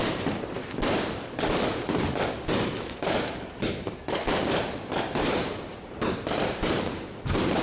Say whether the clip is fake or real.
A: fake